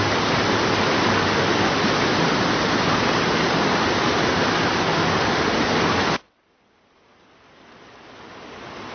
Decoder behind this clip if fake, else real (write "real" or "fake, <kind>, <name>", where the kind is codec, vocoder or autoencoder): real